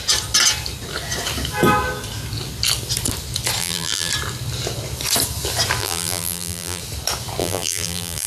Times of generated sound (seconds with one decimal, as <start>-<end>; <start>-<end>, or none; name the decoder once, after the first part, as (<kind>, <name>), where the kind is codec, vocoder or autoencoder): 3.6-4.1 (vocoder, BigVGAN v2); 5.8-6.8; 7.4-8.3